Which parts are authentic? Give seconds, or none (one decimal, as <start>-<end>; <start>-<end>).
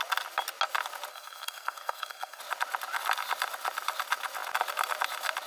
0.0-1.1; 2.4-5.5